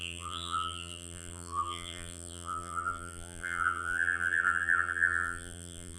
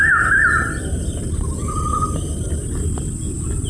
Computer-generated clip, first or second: first